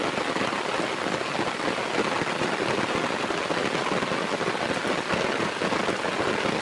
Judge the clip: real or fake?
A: real